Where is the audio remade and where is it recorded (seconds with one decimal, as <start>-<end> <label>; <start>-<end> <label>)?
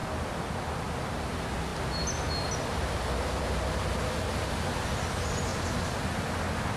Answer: 0.0-6.8 recorded